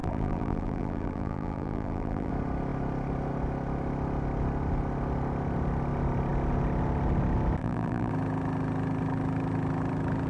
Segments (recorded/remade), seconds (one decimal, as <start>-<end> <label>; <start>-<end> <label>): 0.0-2.3 remade; 2.3-7.6 recorded; 7.6-8.1 remade; 8.1-10.3 recorded